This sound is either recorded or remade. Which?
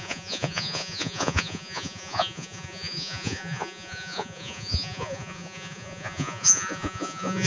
remade